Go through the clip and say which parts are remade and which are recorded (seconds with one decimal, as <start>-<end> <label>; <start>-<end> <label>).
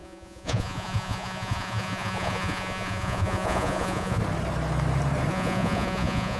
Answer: 0.0-4.2 remade; 4.2-5.3 recorded; 5.3-6.4 remade